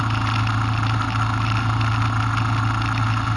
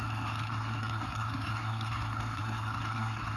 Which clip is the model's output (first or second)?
second